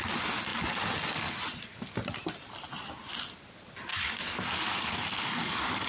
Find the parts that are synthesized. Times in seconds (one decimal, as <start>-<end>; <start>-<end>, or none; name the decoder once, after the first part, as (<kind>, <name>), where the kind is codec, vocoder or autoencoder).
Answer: 3.9-5.9 (codec, DAC)